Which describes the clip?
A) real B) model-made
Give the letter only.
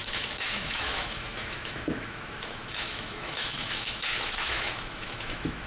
B